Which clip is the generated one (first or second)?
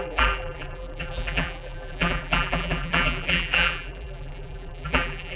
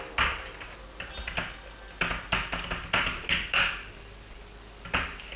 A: first